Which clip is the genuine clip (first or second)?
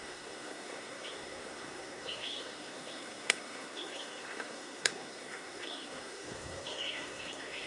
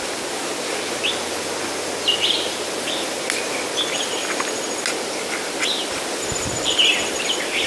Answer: second